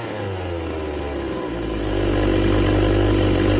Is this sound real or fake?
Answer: real